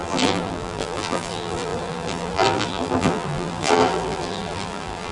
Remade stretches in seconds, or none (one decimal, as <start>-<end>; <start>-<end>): 0.0-5.1